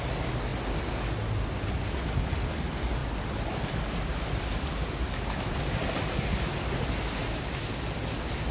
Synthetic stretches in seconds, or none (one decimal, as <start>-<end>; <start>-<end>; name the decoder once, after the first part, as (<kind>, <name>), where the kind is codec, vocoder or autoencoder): none